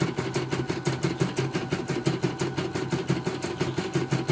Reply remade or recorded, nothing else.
recorded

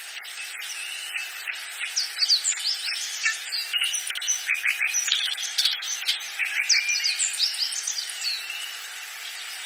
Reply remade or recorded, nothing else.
recorded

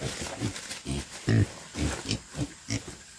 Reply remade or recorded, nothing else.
recorded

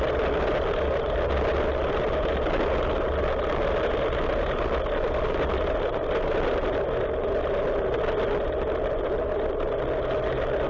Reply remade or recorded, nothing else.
recorded